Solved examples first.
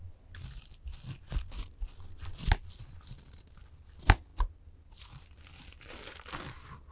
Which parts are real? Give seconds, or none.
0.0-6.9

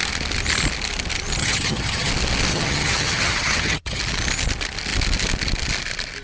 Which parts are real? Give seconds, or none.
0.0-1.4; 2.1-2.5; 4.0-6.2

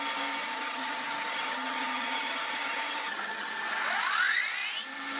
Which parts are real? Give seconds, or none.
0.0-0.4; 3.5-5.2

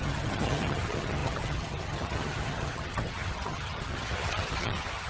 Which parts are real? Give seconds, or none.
none

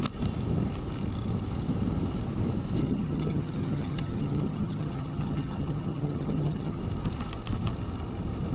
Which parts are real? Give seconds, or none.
0.0-2.8; 6.8-8.5